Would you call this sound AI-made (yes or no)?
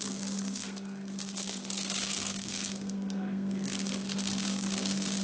yes